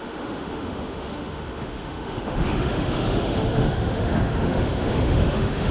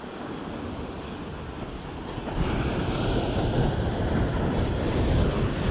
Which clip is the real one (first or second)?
second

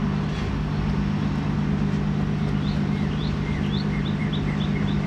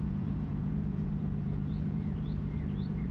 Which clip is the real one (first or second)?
first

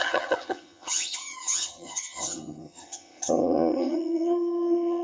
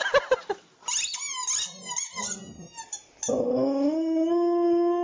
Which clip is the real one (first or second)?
second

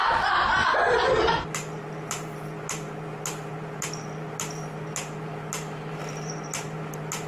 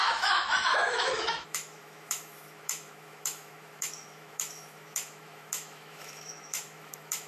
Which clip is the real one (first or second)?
first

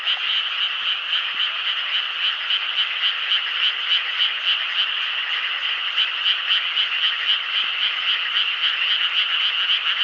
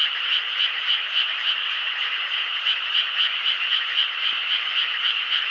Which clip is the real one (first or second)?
first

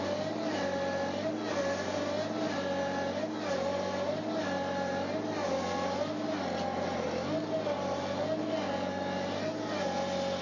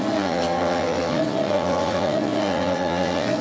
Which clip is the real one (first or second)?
first